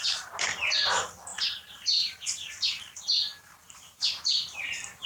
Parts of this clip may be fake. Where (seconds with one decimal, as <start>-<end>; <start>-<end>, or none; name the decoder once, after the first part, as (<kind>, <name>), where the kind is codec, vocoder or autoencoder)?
1.3-2.8 (vocoder, BigVGAN v2); 3.3-5.1